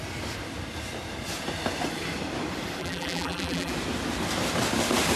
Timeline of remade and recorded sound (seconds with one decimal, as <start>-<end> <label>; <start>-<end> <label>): 0.0-2.8 recorded; 2.8-3.7 remade; 3.7-5.2 recorded